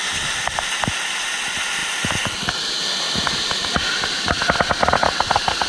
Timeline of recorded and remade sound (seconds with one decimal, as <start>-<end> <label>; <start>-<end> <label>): 0.0-5.7 recorded